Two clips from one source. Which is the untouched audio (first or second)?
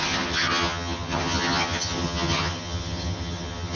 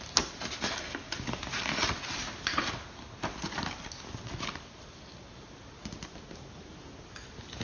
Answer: second